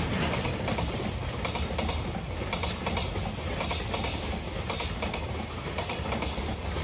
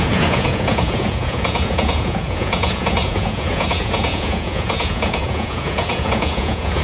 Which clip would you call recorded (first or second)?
first